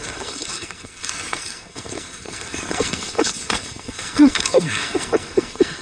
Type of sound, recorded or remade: remade